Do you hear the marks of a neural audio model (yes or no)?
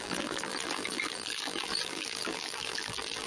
yes